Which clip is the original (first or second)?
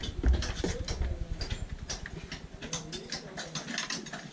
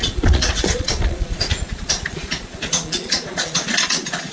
first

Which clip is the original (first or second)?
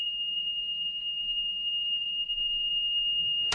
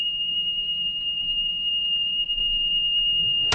second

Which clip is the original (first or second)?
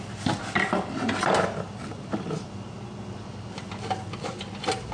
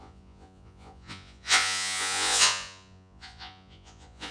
first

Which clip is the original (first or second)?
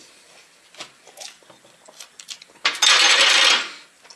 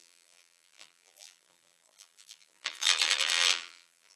first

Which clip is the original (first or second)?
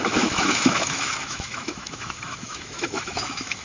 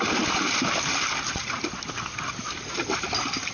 second